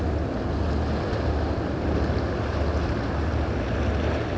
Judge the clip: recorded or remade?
recorded